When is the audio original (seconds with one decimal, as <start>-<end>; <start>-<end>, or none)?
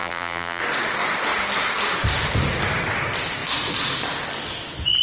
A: 0.6-5.0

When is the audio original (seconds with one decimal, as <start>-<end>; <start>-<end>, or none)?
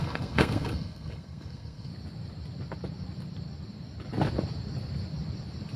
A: 1.9-5.8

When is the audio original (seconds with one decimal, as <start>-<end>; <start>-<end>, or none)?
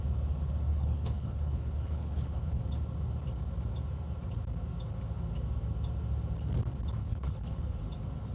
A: 0.0-0.7; 2.6-7.0; 7.8-8.3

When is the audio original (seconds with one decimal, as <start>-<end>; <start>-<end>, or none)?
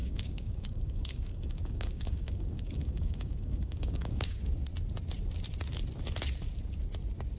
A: 4.4-7.4